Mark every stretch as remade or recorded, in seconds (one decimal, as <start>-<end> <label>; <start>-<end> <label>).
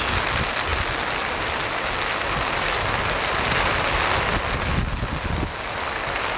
0.0-6.4 recorded